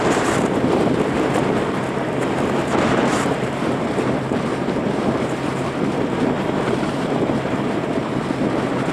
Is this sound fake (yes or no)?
yes